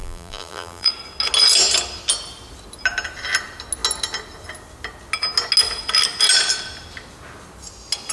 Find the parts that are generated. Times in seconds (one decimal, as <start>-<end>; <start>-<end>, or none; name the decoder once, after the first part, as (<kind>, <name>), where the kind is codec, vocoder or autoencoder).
0.0-0.9 (vocoder, BigVGAN v2)